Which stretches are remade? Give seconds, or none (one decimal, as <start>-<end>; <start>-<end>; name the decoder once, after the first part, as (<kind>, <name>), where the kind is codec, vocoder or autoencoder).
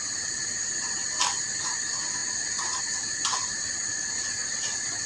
none